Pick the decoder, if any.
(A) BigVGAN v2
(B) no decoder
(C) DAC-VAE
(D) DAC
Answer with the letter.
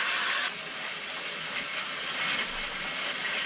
B